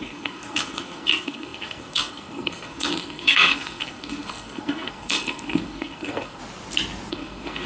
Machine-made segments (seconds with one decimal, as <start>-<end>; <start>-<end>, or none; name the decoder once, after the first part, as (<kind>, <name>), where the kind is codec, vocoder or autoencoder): 0.0-6.4 (codec, SNAC); 7.1-7.7